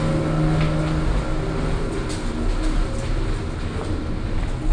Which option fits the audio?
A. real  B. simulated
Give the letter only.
A